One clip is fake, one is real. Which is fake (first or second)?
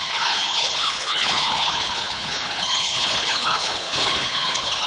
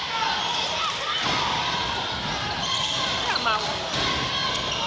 first